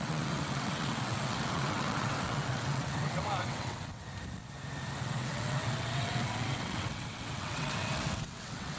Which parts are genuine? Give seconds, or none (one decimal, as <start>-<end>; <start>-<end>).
4.1-5.0